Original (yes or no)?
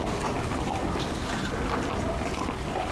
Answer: yes